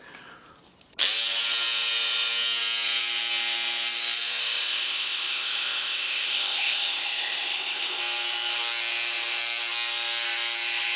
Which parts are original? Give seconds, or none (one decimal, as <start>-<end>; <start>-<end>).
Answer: 0.0-4.7; 8.0-11.0